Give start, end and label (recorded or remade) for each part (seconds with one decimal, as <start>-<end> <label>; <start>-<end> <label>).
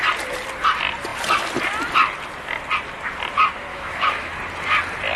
0.0-3.7 recorded; 3.7-4.3 remade; 4.3-5.2 recorded